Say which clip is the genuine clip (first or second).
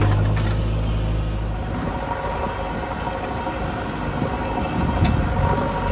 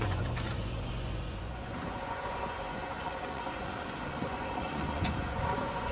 first